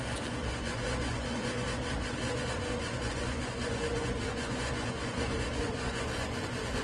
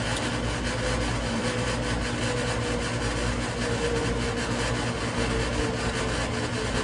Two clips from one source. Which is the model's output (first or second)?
first